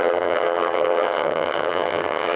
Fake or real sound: fake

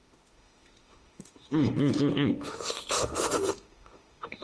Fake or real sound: fake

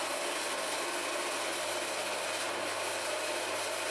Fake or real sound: real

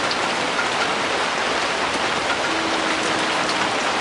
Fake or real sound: real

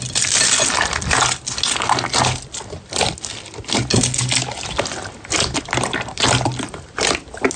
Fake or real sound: real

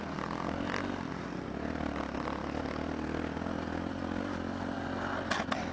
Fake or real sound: real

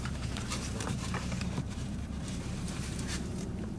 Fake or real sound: fake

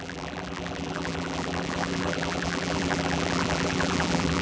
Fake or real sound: fake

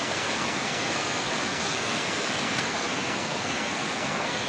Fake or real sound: fake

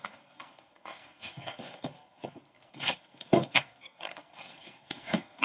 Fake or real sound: fake